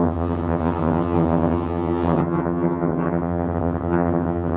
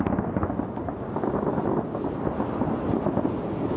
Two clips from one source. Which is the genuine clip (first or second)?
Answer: second